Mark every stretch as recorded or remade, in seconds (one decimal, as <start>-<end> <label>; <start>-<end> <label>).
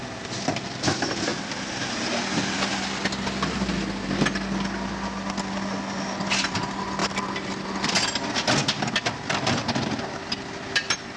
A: 0.0-11.2 recorded